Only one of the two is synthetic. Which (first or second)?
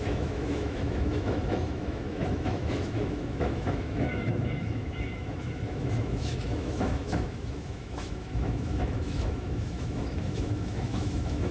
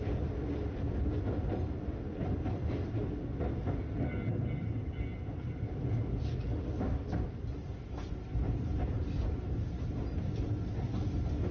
first